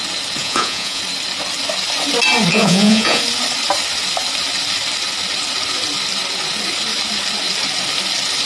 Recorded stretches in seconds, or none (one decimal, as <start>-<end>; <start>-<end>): 0.0-0.4; 1.0-2.5; 3.2-8.5

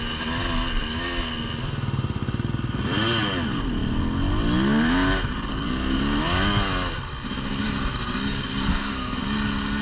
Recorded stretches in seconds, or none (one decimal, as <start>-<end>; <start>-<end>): 0.0-5.5; 6.0-8.7; 9.2-9.8

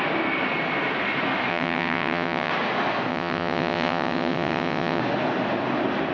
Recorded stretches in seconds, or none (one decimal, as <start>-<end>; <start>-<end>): 0.0-1.5; 2.5-3.1; 5.0-6.1

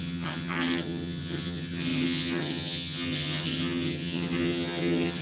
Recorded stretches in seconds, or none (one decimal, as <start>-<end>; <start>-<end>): none